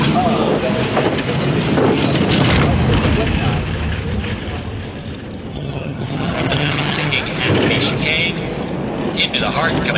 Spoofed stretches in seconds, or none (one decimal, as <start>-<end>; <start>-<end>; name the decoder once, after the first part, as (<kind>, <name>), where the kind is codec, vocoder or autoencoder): 5.5-7.1 (vocoder, HiFi-GAN)